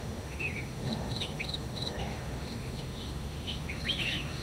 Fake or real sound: fake